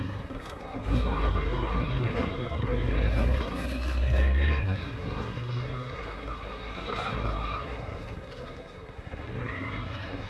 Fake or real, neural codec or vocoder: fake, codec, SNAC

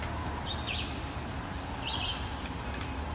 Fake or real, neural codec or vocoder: real